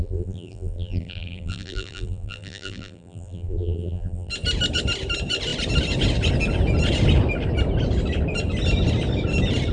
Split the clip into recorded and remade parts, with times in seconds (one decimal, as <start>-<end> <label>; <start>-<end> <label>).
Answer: 0.0-4.3 remade; 4.3-9.7 recorded